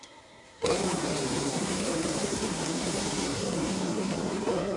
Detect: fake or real fake